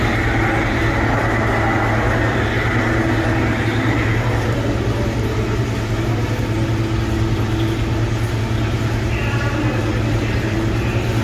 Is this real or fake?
real